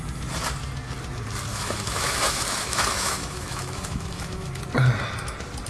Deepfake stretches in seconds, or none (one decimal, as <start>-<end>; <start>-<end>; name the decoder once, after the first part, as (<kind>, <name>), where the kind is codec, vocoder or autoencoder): 1.5-4.6 (autoencoder, DAC-VAE)